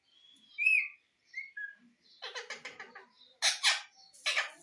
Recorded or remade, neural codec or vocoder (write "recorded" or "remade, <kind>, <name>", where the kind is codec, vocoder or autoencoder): recorded